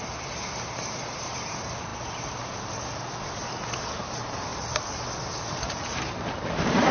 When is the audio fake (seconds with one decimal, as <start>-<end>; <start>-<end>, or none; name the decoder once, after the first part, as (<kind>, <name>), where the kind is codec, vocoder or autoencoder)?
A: 0.0-1.9 (vocoder, BigVGAN v2); 3.9-4.5; 5.7-6.9